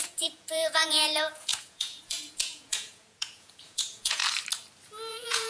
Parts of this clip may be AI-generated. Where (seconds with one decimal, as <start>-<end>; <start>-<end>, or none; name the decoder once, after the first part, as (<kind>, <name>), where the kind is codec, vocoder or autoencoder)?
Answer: 0.0-4.2 (vocoder, Vocos); 5.1-5.5